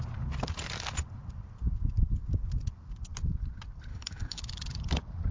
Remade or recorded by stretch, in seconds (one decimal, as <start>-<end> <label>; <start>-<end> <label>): 0.0-3.9 recorded; 3.9-4.4 remade; 4.4-5.3 recorded

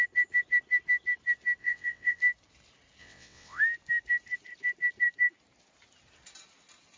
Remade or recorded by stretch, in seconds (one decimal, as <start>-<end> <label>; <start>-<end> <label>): 0.0-1.6 recorded; 1.6-2.2 remade; 2.2-3.0 recorded; 3.0-3.6 remade; 3.6-7.0 recorded

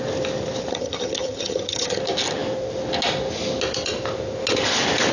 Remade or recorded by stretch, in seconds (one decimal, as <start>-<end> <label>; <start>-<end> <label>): 0.0-0.7 recorded; 0.7-2.0 remade; 2.0-5.1 recorded